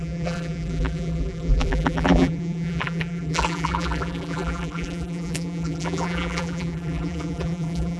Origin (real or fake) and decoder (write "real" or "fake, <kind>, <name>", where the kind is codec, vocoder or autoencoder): fake, vocoder, BigVGAN v2